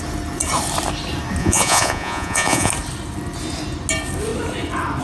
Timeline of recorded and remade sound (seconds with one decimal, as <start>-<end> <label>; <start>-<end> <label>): 0.0-1.4 recorded; 1.4-2.7 remade; 2.7-5.0 recorded